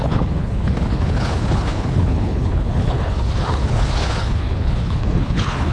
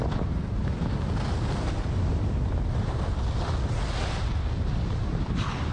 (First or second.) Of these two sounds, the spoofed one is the first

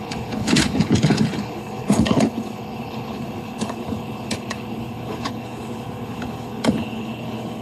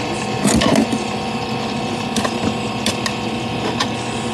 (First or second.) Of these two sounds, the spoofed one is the first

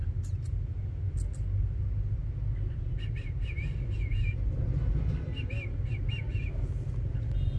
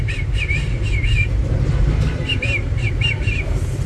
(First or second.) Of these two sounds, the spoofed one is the second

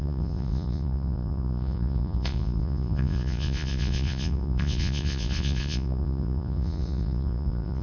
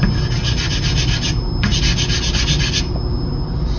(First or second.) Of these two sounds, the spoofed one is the first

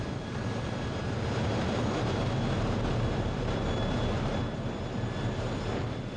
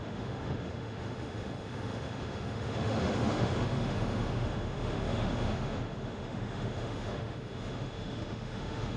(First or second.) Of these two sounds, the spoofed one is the second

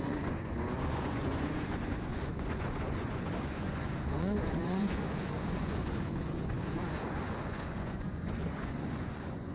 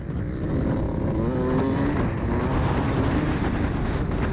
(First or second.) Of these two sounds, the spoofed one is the first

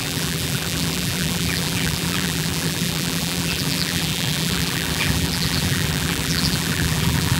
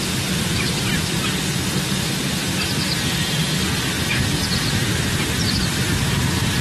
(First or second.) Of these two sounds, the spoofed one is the first